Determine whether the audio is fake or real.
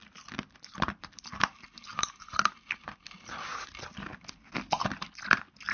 fake